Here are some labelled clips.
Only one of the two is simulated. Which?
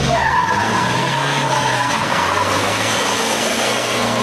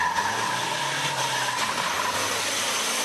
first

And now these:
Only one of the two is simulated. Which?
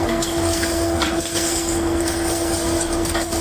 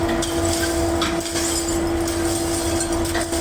first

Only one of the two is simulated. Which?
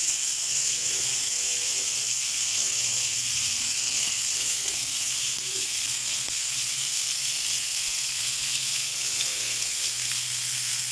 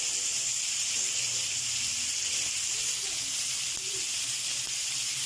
first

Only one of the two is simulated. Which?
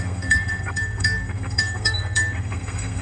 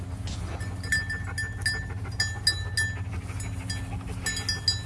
first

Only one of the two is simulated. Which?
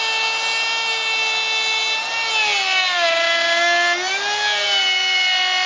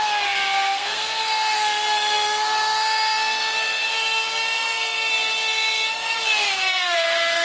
second